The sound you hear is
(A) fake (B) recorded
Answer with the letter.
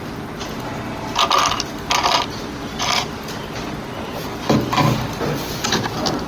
B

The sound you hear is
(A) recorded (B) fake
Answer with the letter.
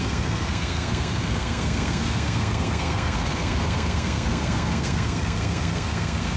B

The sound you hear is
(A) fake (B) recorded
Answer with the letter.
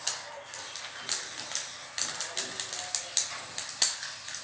B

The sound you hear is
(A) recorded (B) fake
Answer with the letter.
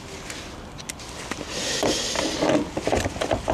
A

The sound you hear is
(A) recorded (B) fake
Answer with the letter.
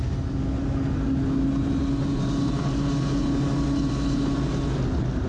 A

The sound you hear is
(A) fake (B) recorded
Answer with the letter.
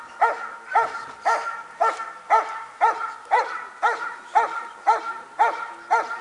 B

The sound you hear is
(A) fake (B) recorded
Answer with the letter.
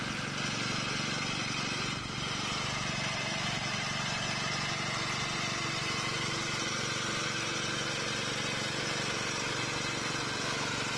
B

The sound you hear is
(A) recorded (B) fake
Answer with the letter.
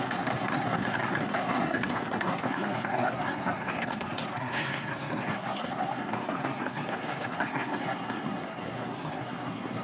B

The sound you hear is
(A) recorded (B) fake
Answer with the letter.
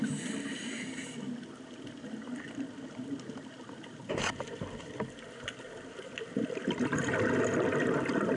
A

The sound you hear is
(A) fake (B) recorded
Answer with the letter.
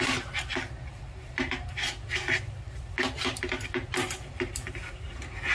B